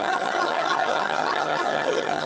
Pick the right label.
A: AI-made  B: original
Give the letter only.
A